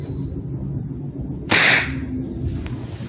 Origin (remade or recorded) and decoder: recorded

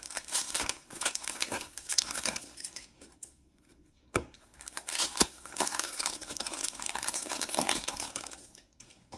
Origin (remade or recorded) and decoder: remade, codec, SNAC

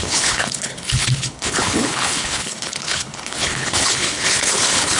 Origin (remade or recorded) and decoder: remade, codec, HILCodec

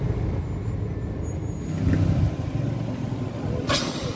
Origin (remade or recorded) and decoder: recorded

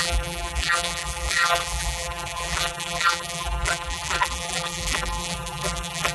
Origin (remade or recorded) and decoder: remade, vocoder, BigVGAN v2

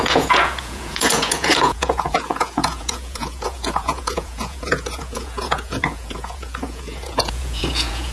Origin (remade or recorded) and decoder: remade, vocoder, Vocos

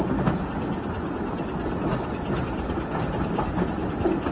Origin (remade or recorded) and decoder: recorded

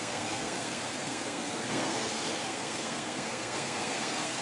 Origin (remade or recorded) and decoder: remade, codec, SNAC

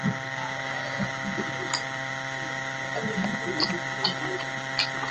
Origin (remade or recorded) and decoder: recorded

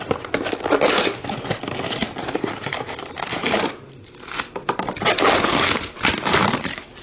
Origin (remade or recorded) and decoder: recorded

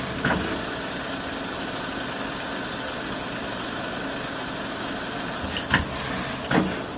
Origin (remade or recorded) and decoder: recorded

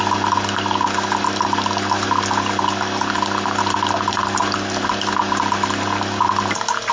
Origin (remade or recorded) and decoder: recorded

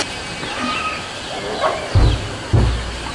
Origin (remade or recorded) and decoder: recorded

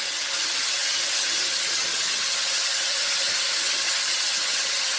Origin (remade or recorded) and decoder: remade, vocoder, HiFi-GAN